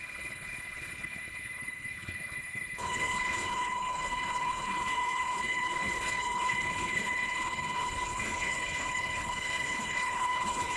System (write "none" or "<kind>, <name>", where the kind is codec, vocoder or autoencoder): codec, HILCodec